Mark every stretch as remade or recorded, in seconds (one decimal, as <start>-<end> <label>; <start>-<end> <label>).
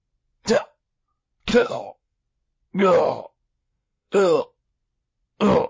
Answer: 0.0-1.5 recorded; 1.5-2.2 remade; 2.2-3.6 recorded; 3.6-4.4 remade; 4.4-5.7 recorded